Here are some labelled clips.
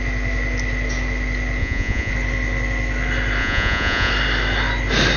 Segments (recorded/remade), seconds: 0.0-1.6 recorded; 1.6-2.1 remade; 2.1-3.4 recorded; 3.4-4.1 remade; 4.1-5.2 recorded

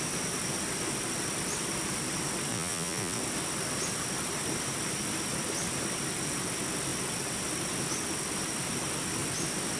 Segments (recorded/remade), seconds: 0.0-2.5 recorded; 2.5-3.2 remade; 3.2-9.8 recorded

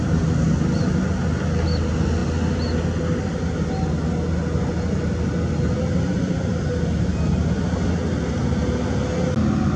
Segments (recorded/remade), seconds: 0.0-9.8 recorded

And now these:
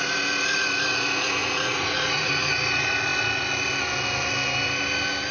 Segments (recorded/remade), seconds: 0.0-1.4 recorded; 1.4-2.3 remade; 2.3-5.3 recorded

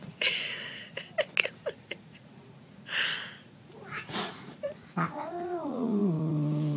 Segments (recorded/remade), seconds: 0.0-0.9 remade; 0.9-1.8 recorded; 1.8-6.8 remade